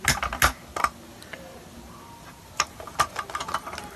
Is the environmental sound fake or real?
real